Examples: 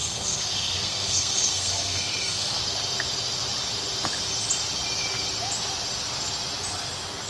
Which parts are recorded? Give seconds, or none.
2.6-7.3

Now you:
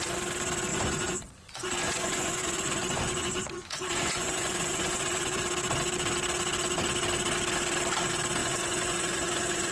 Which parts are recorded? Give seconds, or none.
0.0-0.7; 5.4-8.4

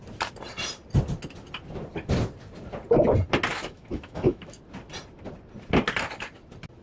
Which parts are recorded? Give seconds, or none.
0.0-3.5; 4.6-6.8

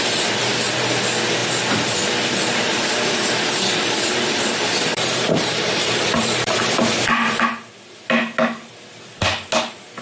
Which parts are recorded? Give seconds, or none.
0.0-4.9; 6.9-10.0

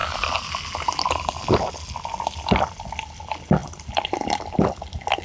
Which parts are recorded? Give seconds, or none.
0.0-3.6; 4.4-5.2